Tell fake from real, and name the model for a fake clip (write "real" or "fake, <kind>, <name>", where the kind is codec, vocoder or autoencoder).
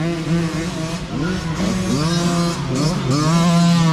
real